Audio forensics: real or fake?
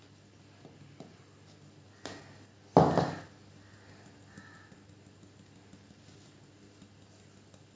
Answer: real